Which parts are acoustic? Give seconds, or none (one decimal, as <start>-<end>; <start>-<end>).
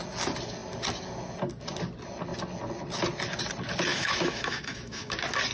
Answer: 0.0-3.9; 5.1-5.5